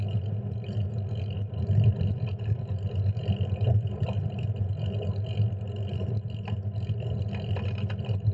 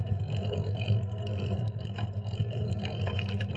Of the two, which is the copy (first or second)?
second